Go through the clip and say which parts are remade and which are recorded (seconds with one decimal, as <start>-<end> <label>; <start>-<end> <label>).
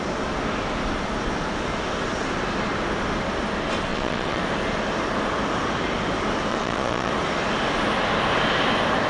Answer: 0.0-3.9 recorded; 3.9-4.4 remade; 4.4-6.5 recorded; 6.5-7.1 remade; 7.1-9.1 recorded